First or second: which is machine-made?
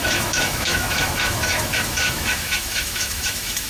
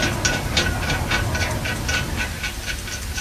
first